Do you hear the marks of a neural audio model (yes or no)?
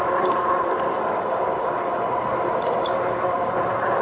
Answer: no